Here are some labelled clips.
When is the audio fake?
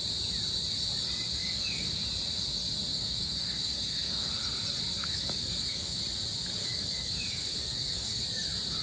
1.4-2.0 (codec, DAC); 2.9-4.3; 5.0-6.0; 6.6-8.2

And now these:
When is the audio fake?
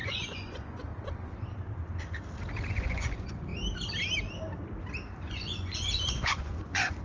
0.0-0.9 (vocoder, Vocos); 2.7-3.5; 5.2-7.0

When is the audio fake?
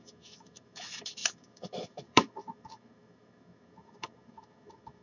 0.0-5.0 (autoencoder, DAC-VAE)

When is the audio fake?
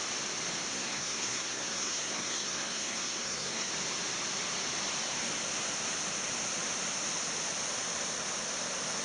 0.7-3.7 (codec, SNAC)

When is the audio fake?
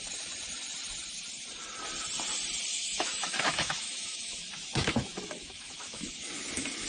2.7-6.4 (autoencoder, DAC-VAE)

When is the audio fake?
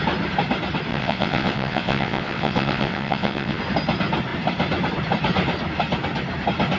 0.9-3.6 (vocoder, WaveNeXt)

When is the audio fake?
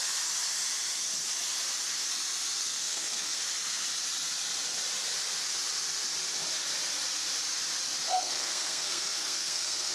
2.6-3.4 (codec, SNAC); 8.1-9.9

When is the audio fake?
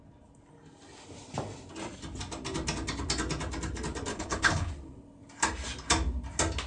4.1-4.7 (codec, HILCodec)